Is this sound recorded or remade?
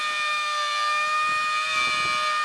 recorded